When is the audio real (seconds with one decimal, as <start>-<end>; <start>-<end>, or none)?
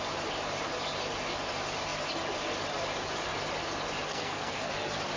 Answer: 0.0-4.1; 4.7-5.2